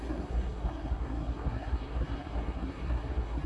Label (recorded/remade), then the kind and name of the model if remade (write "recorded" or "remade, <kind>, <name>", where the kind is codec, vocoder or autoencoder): remade, codec, SNAC